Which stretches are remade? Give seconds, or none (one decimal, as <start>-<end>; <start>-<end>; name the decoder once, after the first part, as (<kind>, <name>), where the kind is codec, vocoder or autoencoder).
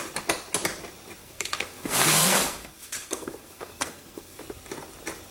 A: 1.2-4.4 (codec, SNAC)